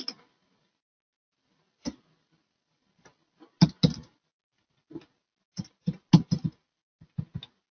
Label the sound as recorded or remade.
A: recorded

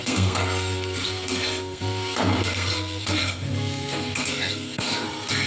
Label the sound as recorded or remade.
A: remade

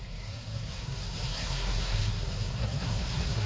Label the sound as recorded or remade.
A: remade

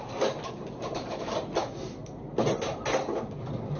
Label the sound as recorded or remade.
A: recorded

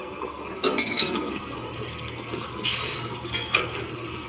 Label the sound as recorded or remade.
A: remade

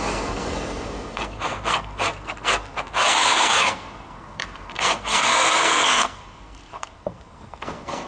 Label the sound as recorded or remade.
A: remade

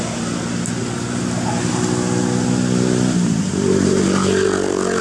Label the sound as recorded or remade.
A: recorded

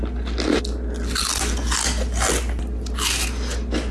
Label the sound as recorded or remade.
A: recorded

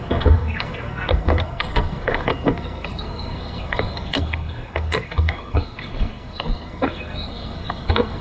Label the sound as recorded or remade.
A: remade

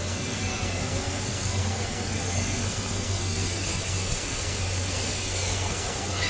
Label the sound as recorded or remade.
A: remade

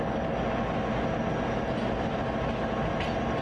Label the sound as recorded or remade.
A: recorded